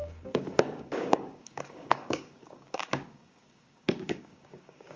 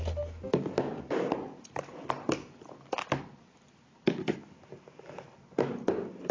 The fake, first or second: first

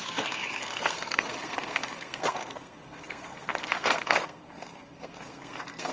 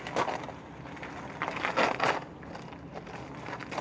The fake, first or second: first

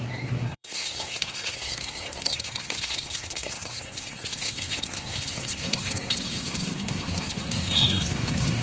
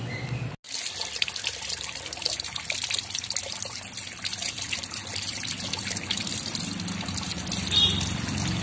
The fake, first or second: first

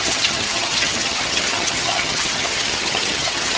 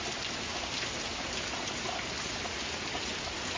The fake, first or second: first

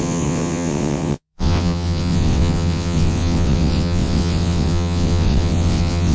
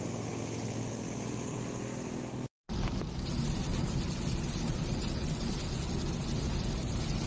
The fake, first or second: first